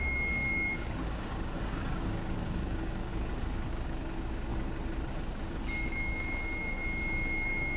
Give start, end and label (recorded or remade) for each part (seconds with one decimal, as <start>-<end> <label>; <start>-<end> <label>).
0.0-3.1 remade; 3.1-3.7 recorded; 3.7-4.5 remade; 4.5-5.1 recorded; 5.1-7.8 remade